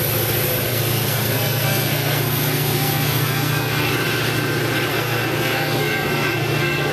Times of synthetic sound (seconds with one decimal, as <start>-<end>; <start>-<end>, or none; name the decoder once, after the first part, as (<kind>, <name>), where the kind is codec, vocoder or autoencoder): 0.7-3.9 (codec, SNAC); 4.9-6.9

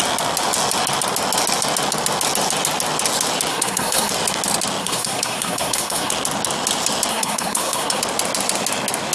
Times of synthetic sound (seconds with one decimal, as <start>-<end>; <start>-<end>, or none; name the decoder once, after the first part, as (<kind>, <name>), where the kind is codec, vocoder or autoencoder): 3.5-4.1 (codec, SNAC); 4.8-6.1; 7.1-8.0

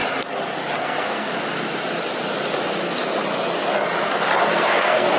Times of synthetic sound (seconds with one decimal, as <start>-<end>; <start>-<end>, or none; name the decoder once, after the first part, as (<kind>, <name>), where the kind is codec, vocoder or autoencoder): 0.8-1.3 (codec, SNAC); 4.4-5.2

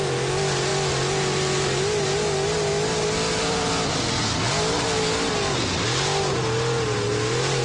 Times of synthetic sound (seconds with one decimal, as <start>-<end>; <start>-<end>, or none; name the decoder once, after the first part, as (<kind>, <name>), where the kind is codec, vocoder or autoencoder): none

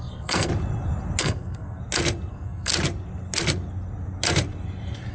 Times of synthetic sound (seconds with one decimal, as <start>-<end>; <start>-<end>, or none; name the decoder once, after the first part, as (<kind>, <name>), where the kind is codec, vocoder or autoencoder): 0.0-0.5 (codec, SNAC); 1.2-1.8; 2.3-2.7